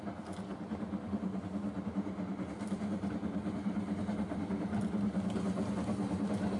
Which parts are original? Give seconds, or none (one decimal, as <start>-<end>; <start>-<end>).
0.0-0.5; 1.3-6.6